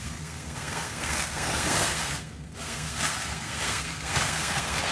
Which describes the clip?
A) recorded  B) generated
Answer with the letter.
B